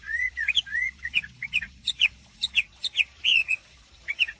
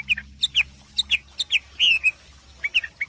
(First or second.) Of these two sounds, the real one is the second